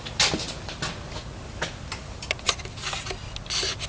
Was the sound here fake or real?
real